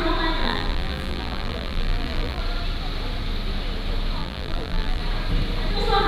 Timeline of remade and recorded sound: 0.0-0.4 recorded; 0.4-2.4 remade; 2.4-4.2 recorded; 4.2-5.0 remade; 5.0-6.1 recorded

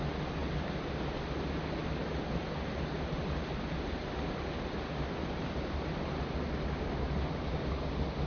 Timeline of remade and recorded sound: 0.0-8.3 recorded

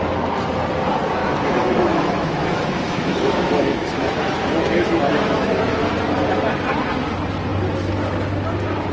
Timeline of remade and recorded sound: 0.0-1.2 recorded; 1.2-5.8 remade; 5.8-8.9 recorded

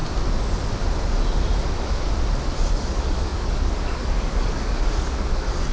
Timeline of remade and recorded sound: 0.0-1.7 recorded; 1.7-2.1 remade; 2.1-2.7 recorded; 2.7-5.7 remade

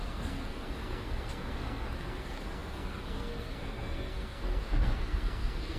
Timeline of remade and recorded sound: 0.0-5.8 remade

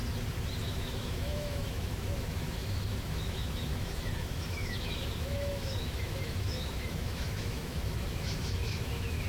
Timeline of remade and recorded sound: 0.0-0.6 recorded; 0.6-9.3 remade